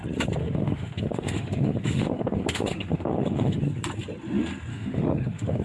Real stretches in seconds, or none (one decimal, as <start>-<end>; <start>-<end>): 0.0-0.4; 3.6-4.7

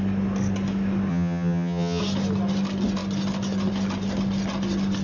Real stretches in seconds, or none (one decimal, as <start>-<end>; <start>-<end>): 0.0-1.1; 2.0-5.0

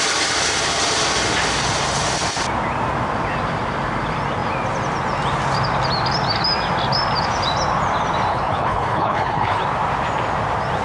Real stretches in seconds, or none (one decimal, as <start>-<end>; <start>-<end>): 0.0-8.3; 9.6-10.8

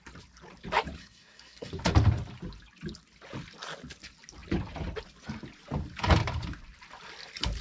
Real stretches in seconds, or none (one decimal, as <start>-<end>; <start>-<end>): 0.0-1.0; 1.7-7.6

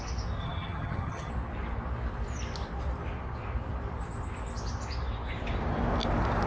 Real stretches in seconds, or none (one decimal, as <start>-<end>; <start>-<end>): 0.0-0.4; 1.3-6.5

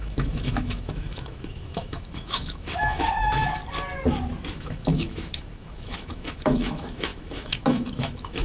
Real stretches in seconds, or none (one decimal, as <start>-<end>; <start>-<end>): 3.6-4.5